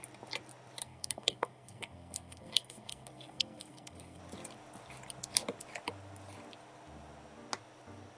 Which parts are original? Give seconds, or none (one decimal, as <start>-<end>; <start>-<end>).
0.0-0.8; 4.2-8.2